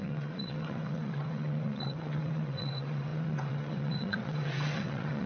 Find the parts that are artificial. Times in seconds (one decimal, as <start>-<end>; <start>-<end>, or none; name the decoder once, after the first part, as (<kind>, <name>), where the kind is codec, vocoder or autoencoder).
0.0-5.3 (vocoder, WaveNeXt)